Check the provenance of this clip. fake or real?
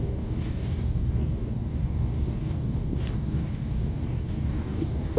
fake